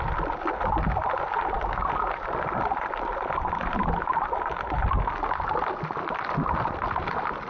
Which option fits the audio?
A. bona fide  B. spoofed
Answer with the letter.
A